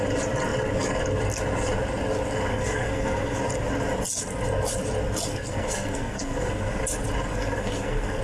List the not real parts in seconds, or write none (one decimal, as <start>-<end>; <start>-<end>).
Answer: 2.5-3.4; 5.3-6.8; 7.3-8.2